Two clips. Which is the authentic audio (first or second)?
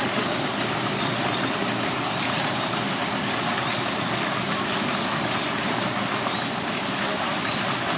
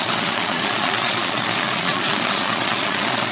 first